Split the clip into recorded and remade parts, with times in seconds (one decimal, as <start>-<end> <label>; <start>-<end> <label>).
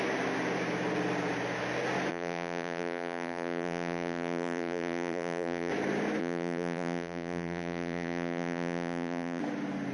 0.0-2.1 recorded; 2.1-5.7 remade; 5.7-6.2 recorded; 6.2-9.4 remade; 9.4-9.9 recorded